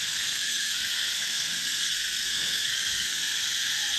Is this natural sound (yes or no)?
no